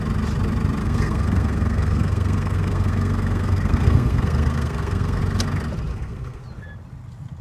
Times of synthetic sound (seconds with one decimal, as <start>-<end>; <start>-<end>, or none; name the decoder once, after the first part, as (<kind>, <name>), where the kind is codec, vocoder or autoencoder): 0.8-5.2 (codec, SNAC); 5.9-6.4